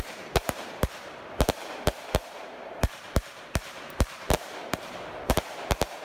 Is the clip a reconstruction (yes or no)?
yes